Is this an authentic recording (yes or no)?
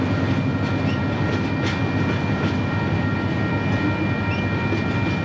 yes